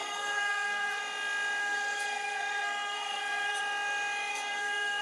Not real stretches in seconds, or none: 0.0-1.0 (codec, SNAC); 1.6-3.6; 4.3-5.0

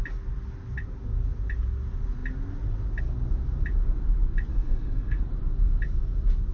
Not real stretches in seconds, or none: 4.5-5.2 (codec, SNAC)

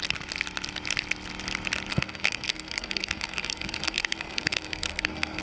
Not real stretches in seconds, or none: 1.9-5.4 (codec, SNAC)

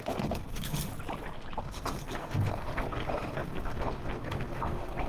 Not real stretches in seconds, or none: 0.0-0.9 (codec, SNAC); 1.6-5.1

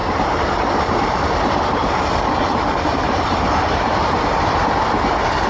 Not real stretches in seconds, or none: none

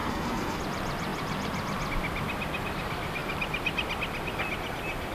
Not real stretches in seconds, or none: 0.0-0.6 (codec, SNAC)